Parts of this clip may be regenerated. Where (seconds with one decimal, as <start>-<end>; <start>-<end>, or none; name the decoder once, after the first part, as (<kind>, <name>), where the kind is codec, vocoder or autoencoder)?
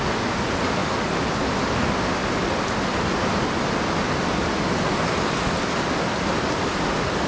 none